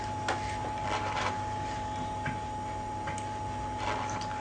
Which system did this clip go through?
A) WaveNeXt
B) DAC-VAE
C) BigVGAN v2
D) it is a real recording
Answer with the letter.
D